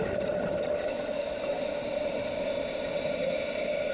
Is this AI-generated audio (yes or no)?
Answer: no